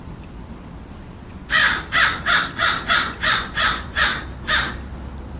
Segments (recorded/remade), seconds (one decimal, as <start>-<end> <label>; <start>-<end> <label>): 0.0-1.2 recorded; 1.2-1.6 remade; 1.6-2.9 recorded; 2.9-4.1 remade; 4.1-5.4 recorded